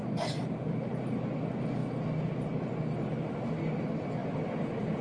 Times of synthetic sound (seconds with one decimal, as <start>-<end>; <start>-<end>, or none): none